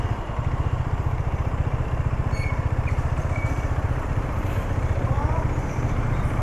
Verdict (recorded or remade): remade